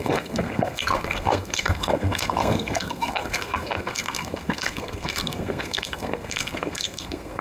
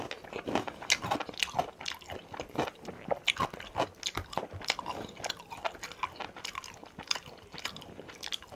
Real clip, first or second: second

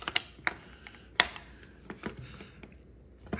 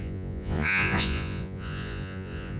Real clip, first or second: first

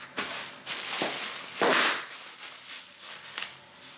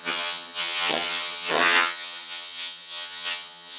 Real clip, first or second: first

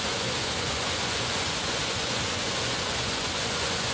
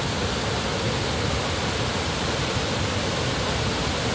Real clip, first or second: second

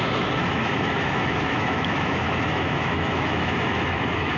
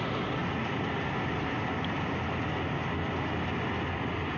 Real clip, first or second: second